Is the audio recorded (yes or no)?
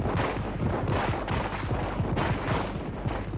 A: yes